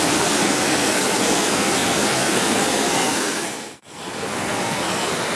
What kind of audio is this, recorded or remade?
remade